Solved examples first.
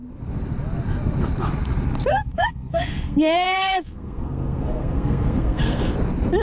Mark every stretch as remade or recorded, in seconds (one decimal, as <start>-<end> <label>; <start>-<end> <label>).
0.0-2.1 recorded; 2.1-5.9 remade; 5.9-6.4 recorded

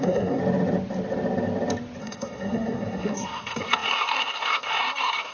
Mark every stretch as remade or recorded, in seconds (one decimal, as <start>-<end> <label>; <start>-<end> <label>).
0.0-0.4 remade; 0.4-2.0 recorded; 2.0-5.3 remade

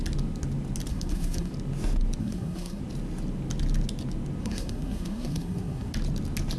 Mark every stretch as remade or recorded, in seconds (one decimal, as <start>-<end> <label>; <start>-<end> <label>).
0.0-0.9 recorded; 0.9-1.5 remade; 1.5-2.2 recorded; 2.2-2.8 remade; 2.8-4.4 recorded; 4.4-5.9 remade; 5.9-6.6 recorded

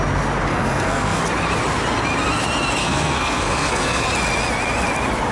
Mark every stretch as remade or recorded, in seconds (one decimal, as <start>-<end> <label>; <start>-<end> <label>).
0.0-0.5 recorded; 0.5-1.2 remade; 1.2-2.8 recorded; 2.8-4.1 remade; 4.1-5.3 recorded

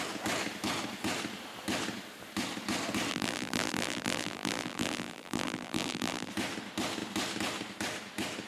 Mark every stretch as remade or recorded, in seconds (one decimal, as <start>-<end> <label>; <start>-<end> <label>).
0.0-3.1 recorded; 3.1-6.3 remade; 6.3-8.5 recorded